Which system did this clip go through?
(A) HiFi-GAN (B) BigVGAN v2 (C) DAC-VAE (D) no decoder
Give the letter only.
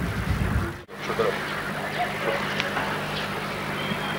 D